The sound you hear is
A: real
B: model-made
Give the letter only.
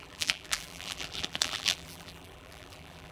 B